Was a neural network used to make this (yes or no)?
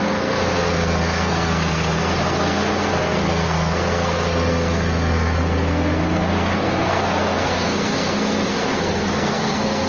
yes